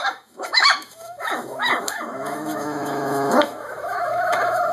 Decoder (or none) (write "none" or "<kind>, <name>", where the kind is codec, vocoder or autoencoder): autoencoder, DAC-VAE